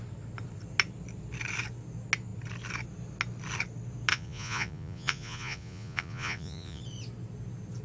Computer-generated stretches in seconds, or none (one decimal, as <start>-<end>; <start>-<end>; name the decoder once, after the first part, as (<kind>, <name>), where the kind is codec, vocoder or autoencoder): 4.1-6.8 (vocoder, Vocos)